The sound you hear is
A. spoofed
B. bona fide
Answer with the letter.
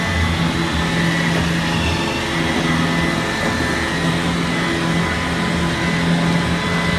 B